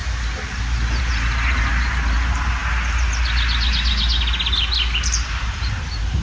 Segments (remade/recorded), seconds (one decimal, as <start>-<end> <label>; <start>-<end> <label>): 0.0-1.0 recorded; 1.0-2.6 remade; 2.6-5.4 recorded; 5.4-6.2 remade

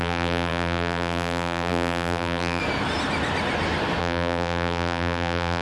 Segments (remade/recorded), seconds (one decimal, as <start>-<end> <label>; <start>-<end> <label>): 0.0-2.6 remade; 2.6-4.0 recorded; 4.0-5.6 remade

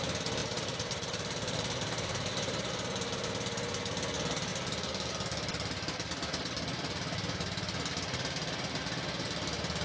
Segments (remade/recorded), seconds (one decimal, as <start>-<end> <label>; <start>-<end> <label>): 0.0-0.4 recorded; 0.4-2.7 remade; 2.7-9.8 recorded